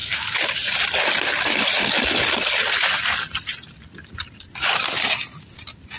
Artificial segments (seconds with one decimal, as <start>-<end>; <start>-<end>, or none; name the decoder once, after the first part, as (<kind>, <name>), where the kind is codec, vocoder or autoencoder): none